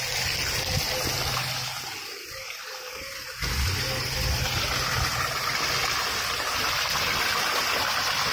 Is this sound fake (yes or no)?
no